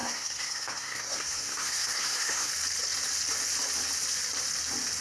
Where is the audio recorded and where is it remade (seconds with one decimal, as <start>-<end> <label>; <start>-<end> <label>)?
0.0-2.5 remade; 2.5-5.0 recorded